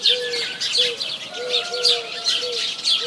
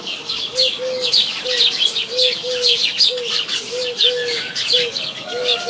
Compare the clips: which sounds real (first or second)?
first